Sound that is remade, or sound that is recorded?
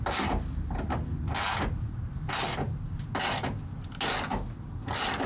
recorded